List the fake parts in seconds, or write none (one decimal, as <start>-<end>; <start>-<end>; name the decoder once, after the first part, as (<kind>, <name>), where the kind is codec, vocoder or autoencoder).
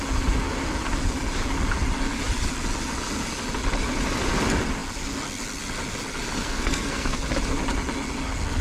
6.4-7.2 (codec, SNAC)